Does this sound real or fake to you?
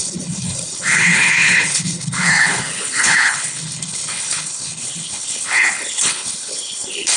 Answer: fake